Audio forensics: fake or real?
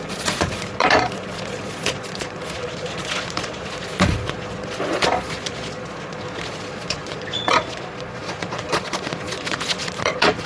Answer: fake